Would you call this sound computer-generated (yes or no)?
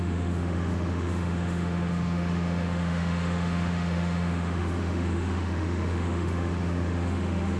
yes